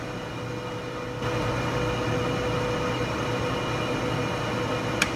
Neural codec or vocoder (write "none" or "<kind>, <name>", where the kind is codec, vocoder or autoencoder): none